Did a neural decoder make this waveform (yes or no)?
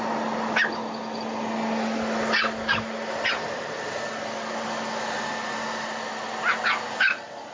no